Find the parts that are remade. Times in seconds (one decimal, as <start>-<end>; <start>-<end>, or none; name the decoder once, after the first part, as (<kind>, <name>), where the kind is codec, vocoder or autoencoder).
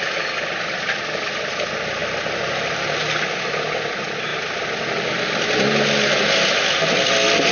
none